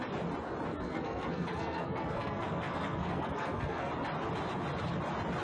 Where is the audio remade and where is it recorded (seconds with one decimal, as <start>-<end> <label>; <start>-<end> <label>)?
0.0-0.7 recorded; 0.7-3.9 remade; 3.9-5.4 recorded